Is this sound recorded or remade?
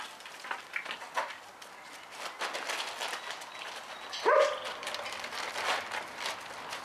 recorded